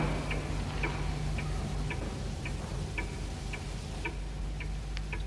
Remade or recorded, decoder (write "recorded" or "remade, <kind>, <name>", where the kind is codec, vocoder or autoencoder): recorded